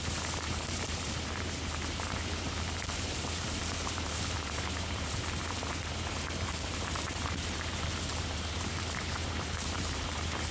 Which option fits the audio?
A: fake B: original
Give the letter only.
A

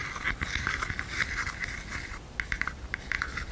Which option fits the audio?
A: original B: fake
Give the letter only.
A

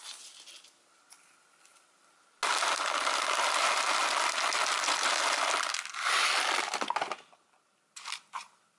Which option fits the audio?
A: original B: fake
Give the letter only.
A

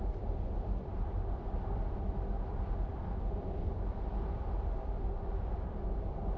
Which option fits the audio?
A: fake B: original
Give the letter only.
A